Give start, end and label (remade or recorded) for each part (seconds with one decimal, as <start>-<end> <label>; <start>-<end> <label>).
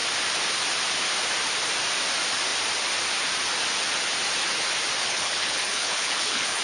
0.0-5.0 recorded; 5.0-6.6 remade